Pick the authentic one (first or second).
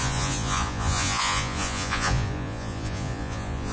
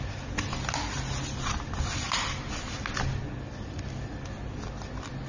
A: second